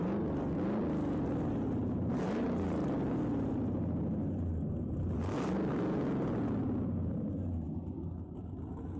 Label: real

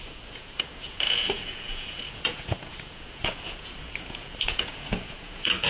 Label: fake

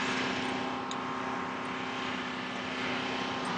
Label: real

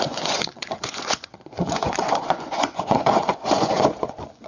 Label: fake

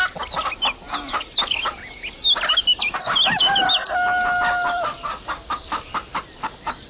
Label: real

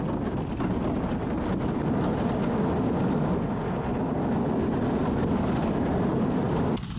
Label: real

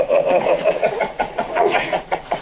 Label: fake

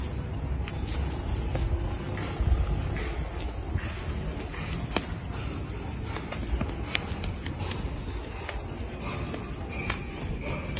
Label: real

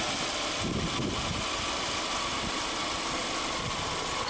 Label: real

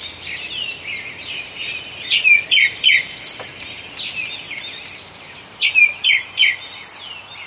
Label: real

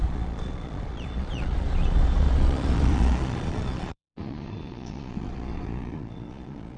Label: fake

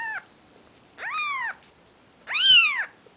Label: real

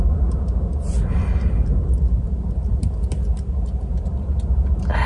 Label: real